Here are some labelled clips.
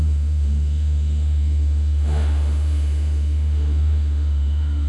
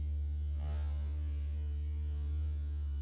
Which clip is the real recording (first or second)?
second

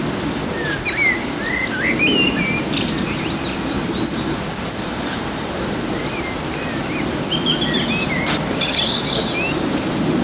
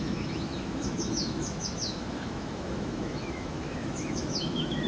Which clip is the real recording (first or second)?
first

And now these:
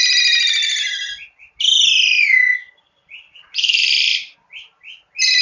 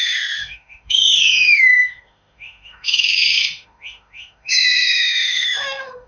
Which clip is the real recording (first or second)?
first